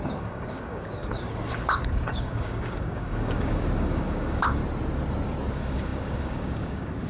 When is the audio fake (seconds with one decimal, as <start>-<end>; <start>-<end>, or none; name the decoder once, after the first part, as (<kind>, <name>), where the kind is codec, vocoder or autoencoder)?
0.0-4.6 (codec, DAC); 5.5-7.1